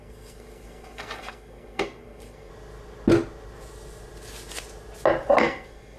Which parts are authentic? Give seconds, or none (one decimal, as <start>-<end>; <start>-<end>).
2.5-5.4